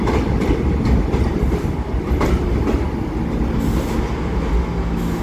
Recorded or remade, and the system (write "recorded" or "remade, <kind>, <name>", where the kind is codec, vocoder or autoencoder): recorded